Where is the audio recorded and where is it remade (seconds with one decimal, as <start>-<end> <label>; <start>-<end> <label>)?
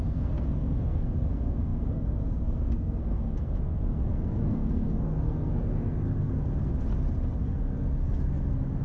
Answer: 0.0-6.7 remade; 6.7-7.4 recorded; 7.4-8.8 remade